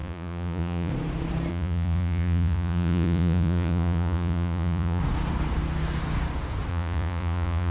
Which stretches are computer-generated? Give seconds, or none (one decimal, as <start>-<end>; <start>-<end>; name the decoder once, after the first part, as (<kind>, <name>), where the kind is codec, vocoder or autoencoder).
0.0-0.9 (vocoder, Vocos); 1.5-5.0; 6.7-7.7